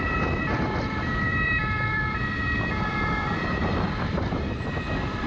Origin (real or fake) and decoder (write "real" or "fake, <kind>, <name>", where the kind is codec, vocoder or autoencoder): fake, vocoder, BigVGAN v2